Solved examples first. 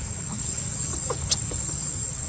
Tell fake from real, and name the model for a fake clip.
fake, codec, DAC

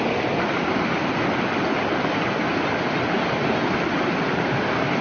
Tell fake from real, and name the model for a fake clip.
real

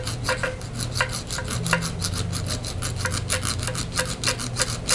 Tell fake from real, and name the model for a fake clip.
real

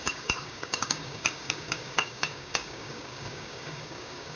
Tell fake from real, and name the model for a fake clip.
fake, codec, DAC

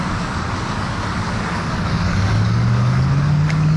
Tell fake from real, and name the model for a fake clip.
fake, codec, DAC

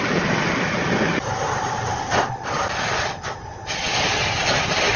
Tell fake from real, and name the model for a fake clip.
real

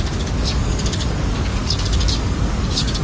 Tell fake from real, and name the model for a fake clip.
fake, codec, DAC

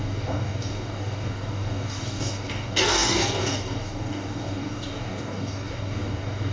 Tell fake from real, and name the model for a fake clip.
fake, codec, DAC